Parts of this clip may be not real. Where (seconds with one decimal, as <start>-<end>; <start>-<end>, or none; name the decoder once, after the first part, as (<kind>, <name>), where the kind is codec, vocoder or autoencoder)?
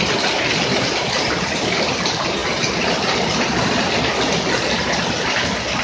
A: none